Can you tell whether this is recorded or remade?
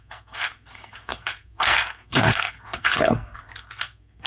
remade